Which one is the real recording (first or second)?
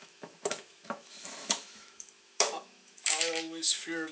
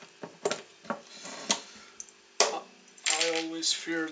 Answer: second